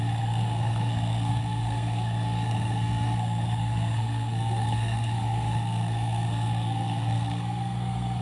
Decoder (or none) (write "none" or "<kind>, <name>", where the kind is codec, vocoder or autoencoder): codec, SNAC